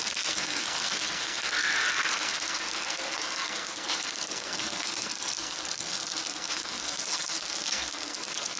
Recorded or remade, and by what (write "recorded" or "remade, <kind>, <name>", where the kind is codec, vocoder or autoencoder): remade, codec, SNAC